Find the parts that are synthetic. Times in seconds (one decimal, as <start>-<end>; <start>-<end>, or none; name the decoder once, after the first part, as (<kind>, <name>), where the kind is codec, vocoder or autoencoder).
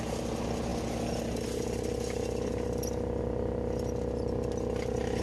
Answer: none